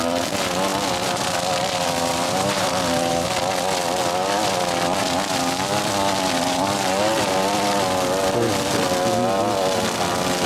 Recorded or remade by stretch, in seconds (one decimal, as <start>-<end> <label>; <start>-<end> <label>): 0.0-10.5 recorded